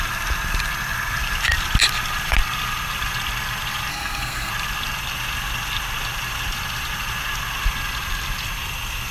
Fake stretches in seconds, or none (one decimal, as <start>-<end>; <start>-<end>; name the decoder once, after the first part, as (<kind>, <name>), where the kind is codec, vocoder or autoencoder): 3.9-4.5 (codec, SNAC)

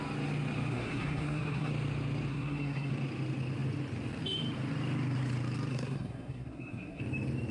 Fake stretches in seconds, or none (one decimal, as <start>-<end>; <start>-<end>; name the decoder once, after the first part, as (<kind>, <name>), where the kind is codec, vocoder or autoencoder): 0.7-1.7 (codec, SNAC); 2.3-2.9; 5.7-7.0